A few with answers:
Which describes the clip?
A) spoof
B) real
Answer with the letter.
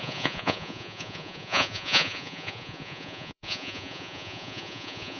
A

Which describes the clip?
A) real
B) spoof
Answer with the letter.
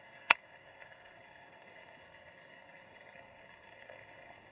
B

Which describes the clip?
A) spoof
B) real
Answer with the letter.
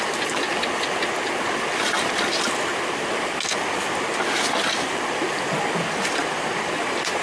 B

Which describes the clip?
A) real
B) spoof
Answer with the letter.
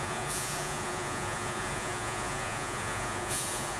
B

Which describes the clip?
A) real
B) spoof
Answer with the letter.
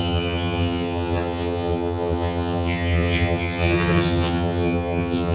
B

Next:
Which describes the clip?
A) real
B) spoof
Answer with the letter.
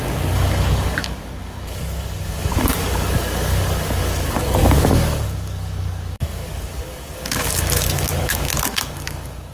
B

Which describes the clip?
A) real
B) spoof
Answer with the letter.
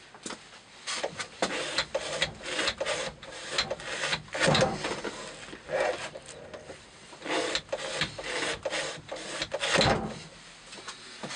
A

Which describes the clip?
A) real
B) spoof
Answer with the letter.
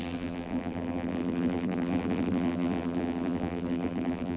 B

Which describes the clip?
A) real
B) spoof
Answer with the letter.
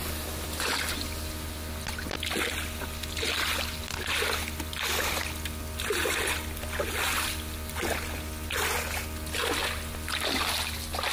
A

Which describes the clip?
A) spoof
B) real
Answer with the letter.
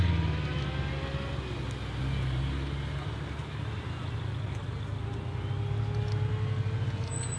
B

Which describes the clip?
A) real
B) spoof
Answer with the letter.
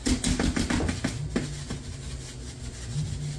A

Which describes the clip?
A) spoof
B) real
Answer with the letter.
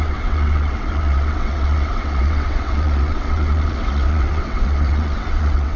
A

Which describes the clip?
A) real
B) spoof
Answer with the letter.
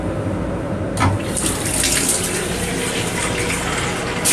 A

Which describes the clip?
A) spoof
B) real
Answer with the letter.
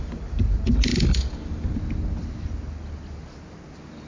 B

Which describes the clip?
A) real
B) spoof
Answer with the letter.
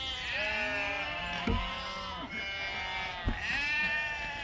A